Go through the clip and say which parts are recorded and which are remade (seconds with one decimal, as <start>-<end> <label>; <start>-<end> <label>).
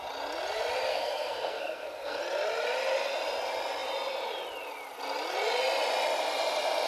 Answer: 0.0-0.9 recorded; 0.9-2.2 remade; 2.2-6.9 recorded